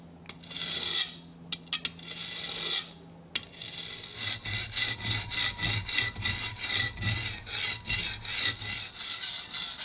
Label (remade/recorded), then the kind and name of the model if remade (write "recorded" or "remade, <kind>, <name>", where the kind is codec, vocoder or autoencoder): recorded